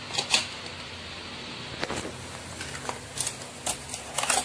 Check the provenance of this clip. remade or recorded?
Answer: recorded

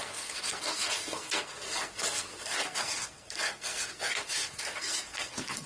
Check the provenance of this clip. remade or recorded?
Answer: remade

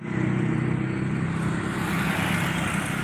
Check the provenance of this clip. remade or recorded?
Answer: recorded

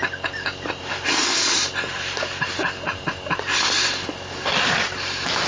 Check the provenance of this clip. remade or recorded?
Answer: recorded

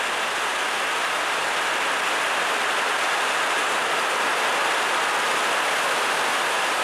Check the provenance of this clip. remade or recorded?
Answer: recorded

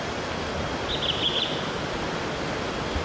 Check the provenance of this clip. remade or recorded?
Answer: recorded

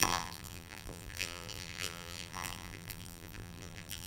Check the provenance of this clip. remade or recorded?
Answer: remade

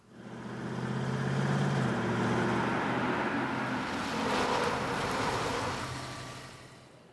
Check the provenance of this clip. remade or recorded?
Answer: recorded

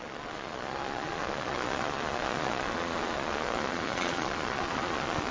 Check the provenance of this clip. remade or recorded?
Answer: remade